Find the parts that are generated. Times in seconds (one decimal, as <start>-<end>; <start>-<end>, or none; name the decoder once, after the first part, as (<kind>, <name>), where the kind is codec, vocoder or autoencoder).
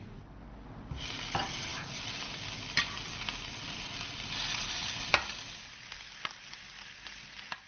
none